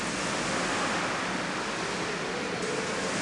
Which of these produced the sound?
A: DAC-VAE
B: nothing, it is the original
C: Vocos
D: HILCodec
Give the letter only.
B